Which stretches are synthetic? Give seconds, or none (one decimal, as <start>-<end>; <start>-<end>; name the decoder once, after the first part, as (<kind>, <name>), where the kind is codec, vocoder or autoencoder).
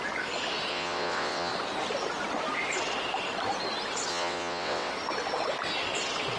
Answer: 0.7-1.5 (vocoder, WaveNeXt); 4.1-4.9